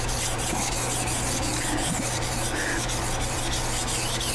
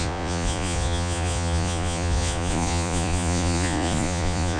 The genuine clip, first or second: first